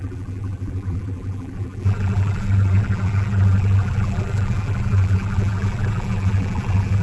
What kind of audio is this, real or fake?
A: fake